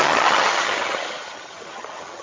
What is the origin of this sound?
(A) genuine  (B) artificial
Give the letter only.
B